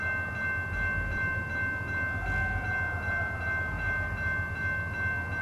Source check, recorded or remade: recorded